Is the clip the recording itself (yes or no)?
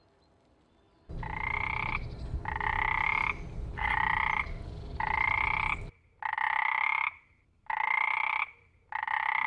yes